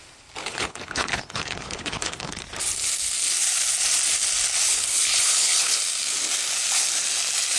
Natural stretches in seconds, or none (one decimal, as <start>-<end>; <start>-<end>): 0.0-0.4; 2.4-4.7; 5.8-7.6